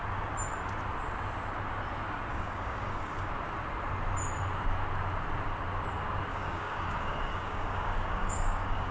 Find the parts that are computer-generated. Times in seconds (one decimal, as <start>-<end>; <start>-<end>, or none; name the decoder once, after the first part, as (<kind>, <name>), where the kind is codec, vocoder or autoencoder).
2.3-3.3 (codec, DAC); 6.3-8.9